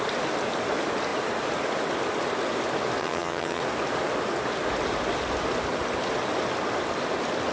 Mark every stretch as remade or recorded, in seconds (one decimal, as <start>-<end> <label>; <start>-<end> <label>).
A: 0.0-3.0 recorded; 3.0-3.6 remade; 3.6-7.5 recorded

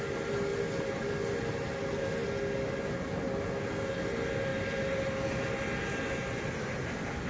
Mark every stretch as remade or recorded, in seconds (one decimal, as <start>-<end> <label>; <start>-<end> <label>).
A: 0.0-7.3 recorded

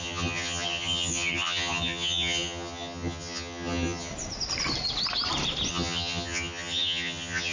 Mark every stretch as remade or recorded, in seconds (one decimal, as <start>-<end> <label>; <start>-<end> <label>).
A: 0.0-4.1 remade; 4.1-5.7 recorded; 5.7-7.5 remade

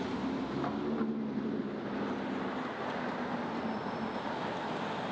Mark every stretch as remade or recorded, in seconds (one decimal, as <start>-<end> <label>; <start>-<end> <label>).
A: 0.0-5.1 recorded

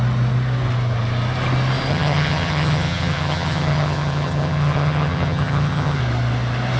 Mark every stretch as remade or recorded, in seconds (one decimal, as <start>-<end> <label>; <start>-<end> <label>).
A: 0.0-1.9 recorded; 1.9-6.0 remade; 6.0-6.8 recorded

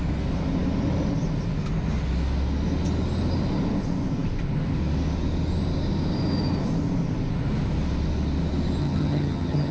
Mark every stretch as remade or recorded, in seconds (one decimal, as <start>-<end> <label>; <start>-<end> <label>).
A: 0.0-8.8 recorded; 8.8-9.7 remade

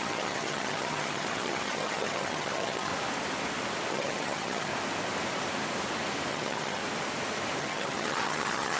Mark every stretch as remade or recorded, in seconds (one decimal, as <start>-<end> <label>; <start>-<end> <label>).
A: 0.0-2.9 remade; 2.9-3.9 recorded; 3.9-4.7 remade; 4.7-6.3 recorded; 6.3-6.8 remade; 6.8-7.6 recorded; 7.6-8.8 remade

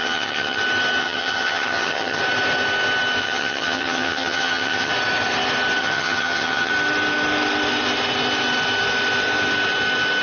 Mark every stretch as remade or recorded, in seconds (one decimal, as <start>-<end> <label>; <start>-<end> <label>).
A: 0.0-0.6 remade; 0.6-1.0 recorded; 1.0-2.2 remade; 2.2-3.2 recorded; 3.2-4.9 remade; 4.9-5.8 recorded; 5.8-6.7 remade; 6.7-10.2 recorded